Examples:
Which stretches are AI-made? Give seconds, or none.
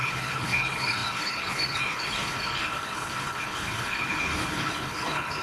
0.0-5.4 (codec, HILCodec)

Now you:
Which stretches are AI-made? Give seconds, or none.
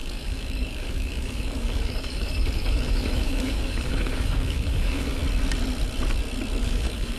0.0-5.2 (codec, DAC); 6.6-7.2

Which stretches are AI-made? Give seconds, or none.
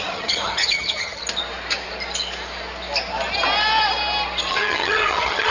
0.0-1.2 (vocoder, HiFi-GAN); 4.5-5.5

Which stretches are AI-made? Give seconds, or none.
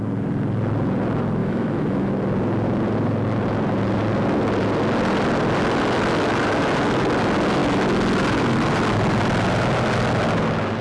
1.4-2.1 (autoencoder, DAC-VAE)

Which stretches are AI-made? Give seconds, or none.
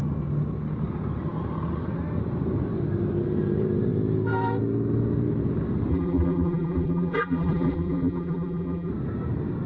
5.9-8.9 (vocoder, BigVGAN v2)